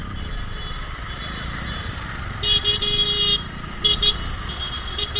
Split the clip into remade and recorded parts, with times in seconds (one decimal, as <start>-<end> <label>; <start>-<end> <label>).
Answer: 0.0-5.2 recorded